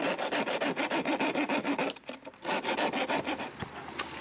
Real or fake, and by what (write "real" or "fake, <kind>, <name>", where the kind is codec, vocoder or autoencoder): real